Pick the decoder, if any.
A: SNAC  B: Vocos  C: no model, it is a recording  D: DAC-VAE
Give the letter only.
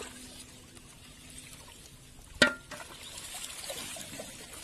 C